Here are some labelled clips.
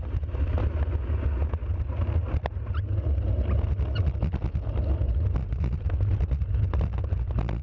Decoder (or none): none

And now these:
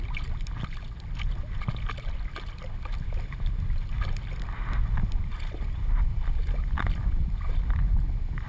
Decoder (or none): none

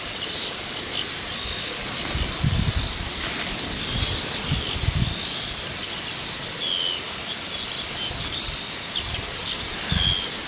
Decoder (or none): none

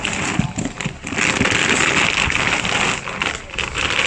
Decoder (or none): none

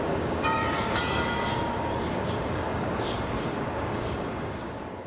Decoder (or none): codec, DAC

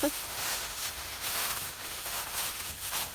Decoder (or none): autoencoder, DAC-VAE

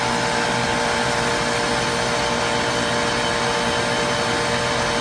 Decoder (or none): none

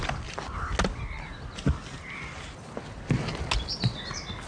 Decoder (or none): none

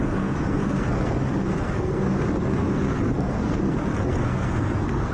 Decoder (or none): codec, SNAC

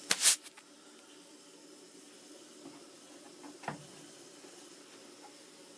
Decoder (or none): none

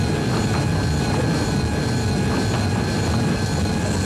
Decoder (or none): none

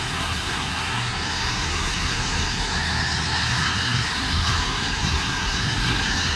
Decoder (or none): codec, SNAC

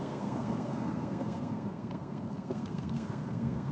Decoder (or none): codec, SNAC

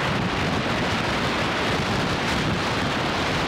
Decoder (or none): none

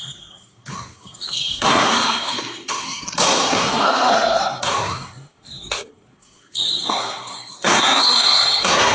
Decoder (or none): codec, SNAC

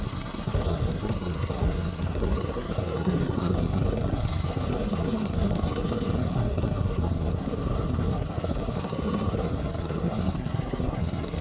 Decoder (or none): codec, SNAC